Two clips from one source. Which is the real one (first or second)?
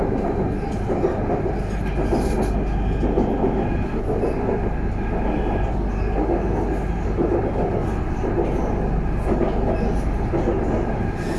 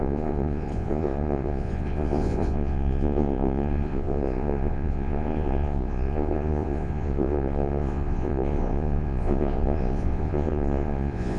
first